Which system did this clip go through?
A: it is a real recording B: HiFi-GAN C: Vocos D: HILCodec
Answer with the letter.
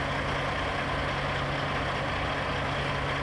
A